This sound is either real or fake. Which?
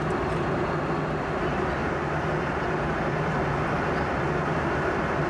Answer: real